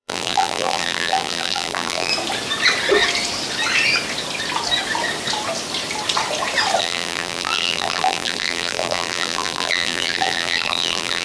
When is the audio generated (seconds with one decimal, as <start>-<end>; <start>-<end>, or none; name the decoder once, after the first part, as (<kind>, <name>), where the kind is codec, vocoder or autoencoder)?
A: 0.0-2.1 (vocoder, BigVGAN v2); 6.8-11.2